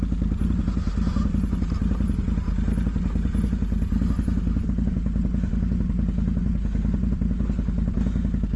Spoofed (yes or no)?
no